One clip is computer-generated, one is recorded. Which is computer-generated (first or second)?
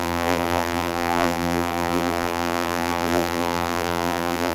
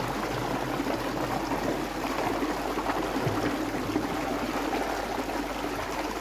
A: first